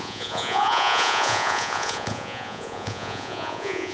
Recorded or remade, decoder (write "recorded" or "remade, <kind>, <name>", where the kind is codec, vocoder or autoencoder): remade, vocoder, Vocos